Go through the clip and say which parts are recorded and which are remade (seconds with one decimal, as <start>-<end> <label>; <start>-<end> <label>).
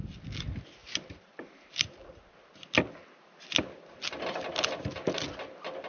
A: 0.0-0.8 recorded; 0.8-2.1 remade; 2.1-5.9 recorded